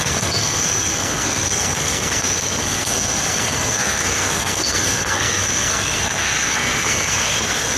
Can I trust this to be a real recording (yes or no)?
no